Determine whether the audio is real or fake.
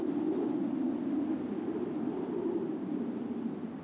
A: real